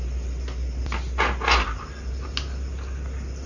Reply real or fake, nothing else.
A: real